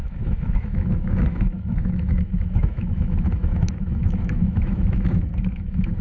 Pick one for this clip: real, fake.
fake